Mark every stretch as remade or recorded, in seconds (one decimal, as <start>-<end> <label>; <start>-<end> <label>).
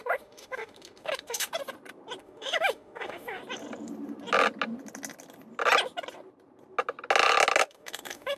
0.0-1.5 remade; 1.5-2.2 recorded; 2.2-3.4 remade; 3.4-7.6 recorded; 7.6-8.4 remade